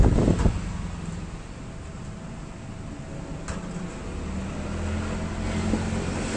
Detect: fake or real real